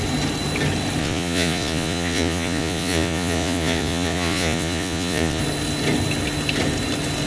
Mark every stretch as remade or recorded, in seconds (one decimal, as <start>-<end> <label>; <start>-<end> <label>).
0.0-1.0 recorded; 1.0-5.4 remade; 5.4-7.3 recorded